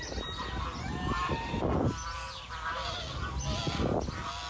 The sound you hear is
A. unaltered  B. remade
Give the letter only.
A